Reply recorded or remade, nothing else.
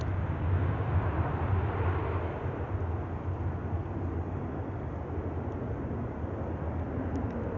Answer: recorded